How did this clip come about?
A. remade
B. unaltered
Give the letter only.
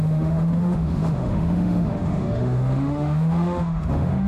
A